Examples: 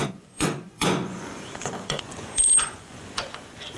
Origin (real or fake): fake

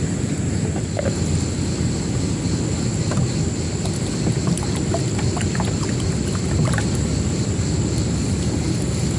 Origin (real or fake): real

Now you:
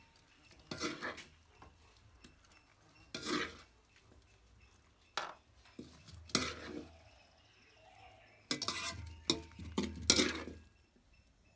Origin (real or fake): real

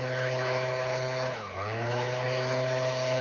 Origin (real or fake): fake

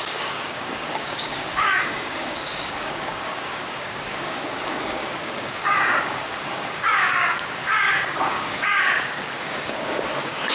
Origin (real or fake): fake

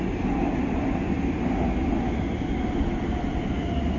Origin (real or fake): real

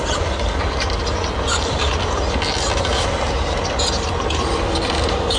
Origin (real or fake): real